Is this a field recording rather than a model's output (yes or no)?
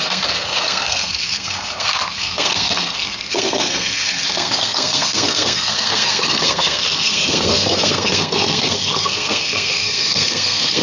no